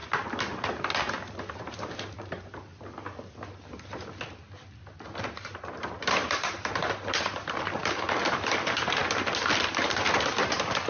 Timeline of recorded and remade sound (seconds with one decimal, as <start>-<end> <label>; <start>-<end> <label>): 0.0-1.6 recorded; 1.6-2.7 remade; 2.7-5.3 recorded; 5.3-9.0 remade; 9.0-9.7 recorded; 9.7-10.9 remade